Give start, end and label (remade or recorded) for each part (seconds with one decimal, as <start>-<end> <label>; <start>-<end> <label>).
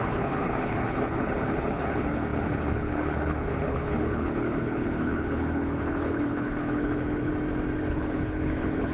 0.0-7.3 remade; 7.3-7.9 recorded; 7.9-8.9 remade